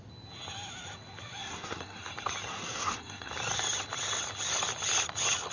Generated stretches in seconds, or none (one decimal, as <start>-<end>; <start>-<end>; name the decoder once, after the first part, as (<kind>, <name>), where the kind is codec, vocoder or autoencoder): 1.4-2.1 (codec, SNAC); 2.5-3.3

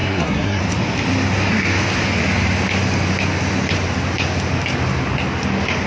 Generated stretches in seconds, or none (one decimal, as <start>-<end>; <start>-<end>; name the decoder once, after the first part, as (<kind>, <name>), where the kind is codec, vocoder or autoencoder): 0.0-0.6 (codec, SNAC)

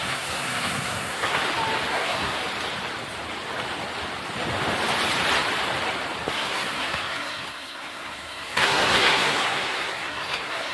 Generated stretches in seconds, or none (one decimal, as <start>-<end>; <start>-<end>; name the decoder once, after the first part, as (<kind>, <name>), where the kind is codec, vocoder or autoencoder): 0.0-1.4 (codec, SNAC); 1.9-2.4; 6.3-10.7

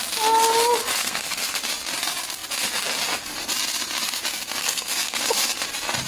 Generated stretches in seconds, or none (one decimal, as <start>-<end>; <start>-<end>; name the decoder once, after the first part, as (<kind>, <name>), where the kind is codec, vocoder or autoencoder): 1.0-1.6 (codec, SNAC); 4.6-5.2

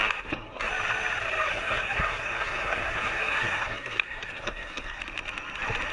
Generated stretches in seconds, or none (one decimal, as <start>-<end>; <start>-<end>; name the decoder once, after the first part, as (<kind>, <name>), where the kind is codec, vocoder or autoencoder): 0.0-0.7 (codec, SNAC); 1.5-5.0

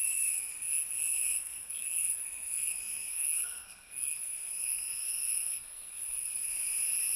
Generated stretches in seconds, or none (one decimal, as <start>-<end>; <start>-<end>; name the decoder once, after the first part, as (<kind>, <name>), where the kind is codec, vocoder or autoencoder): 0.0-0.5 (codec, SNAC); 1.1-6.5